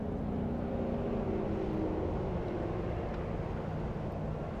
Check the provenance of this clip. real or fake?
real